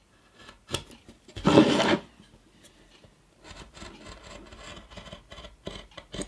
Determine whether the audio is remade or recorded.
recorded